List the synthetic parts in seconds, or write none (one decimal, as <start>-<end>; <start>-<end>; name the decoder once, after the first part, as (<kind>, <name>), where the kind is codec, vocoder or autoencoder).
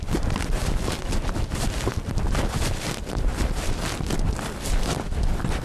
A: 0.0-3.3 (vocoder, BigVGAN v2); 3.8-5.6